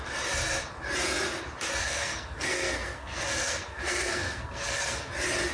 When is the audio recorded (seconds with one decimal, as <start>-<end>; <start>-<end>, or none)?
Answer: 0.0-1.8; 5.1-5.5